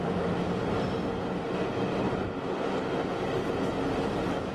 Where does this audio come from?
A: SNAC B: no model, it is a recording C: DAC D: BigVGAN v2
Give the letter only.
B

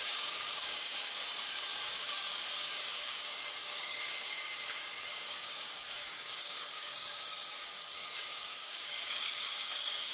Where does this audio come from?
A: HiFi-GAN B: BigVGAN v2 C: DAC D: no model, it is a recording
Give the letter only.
C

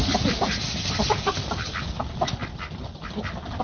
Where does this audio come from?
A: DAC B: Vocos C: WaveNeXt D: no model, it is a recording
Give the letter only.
D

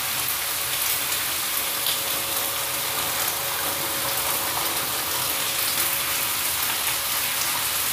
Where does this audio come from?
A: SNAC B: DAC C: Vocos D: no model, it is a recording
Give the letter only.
D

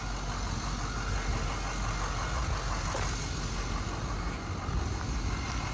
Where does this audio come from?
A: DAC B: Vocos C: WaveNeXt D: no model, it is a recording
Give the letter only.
D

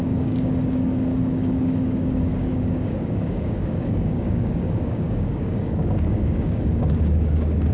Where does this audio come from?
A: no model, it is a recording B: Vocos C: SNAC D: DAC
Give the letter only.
D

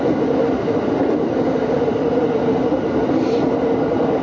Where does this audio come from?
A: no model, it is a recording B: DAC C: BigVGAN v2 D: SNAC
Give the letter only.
A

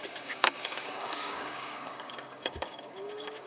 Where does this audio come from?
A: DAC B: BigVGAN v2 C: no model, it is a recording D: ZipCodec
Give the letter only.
A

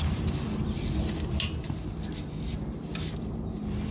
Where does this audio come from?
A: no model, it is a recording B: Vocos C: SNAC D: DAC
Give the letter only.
A